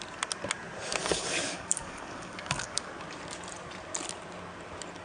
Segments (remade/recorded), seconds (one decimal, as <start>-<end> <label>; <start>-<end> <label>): 0.0-1.0 recorded; 1.0-2.9 remade; 2.9-5.0 recorded